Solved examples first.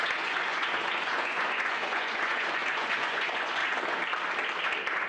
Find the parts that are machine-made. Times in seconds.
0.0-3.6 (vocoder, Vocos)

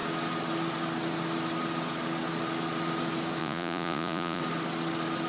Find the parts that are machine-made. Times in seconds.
3.4-4.4 (vocoder, Vocos)

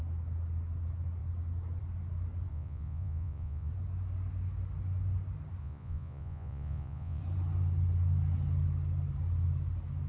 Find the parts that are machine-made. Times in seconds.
2.5-3.7 (vocoder, Vocos); 5.6-7.2